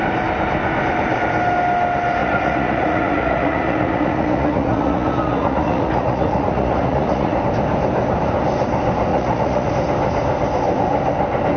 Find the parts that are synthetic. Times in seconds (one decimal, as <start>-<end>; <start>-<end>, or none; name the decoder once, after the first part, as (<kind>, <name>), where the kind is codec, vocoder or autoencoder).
2.2-7.4 (vocoder, Vocos); 9.1-9.7